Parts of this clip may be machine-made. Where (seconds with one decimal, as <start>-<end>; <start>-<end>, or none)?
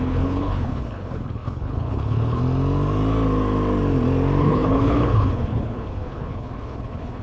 0.0-2.4; 4.4-7.2